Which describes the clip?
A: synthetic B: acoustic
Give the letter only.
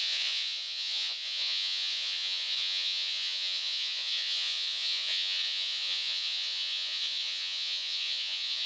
A